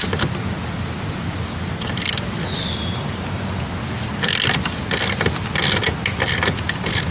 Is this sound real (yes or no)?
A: yes